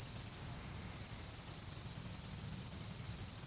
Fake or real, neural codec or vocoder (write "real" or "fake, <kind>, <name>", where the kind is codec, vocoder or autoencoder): real